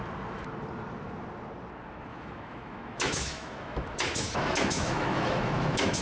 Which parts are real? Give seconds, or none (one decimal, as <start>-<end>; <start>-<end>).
0.0-2.1